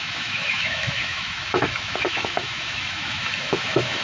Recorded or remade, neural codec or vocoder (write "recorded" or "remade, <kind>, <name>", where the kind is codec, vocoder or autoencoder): remade, autoencoder, DAC-VAE